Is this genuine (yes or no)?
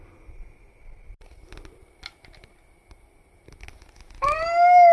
yes